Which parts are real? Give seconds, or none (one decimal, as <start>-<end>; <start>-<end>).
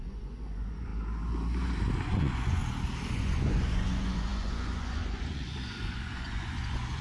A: 0.9-2.1; 2.6-3.1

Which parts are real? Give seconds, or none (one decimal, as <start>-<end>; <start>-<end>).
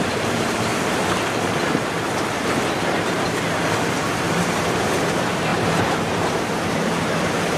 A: 0.7-4.2